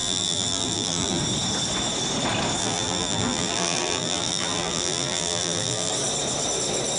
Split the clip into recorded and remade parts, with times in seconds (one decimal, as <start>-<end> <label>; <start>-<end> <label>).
0.0-1.2 remade; 1.2-2.6 recorded; 2.6-5.9 remade; 5.9-7.0 recorded